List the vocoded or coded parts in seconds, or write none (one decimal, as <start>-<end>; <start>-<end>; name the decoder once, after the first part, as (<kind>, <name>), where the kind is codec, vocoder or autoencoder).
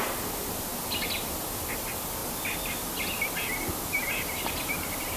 none